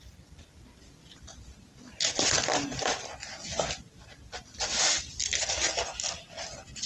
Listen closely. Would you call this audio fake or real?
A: real